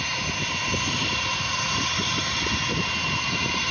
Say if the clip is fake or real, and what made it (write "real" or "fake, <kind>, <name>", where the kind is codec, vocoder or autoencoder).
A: fake, vocoder, BigVGAN v2